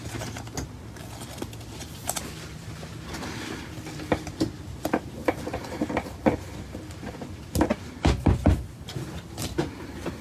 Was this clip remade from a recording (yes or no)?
no